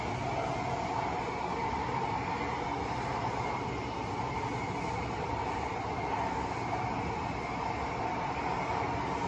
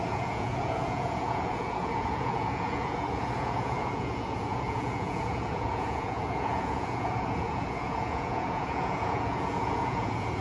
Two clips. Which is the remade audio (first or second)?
second